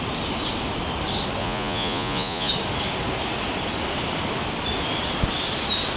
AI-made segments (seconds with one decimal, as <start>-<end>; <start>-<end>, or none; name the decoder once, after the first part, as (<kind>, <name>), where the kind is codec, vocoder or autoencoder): 1.4-2.5 (vocoder, Vocos)